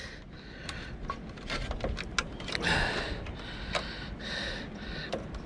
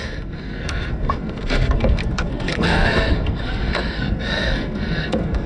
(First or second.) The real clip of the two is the first